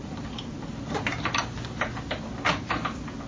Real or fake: real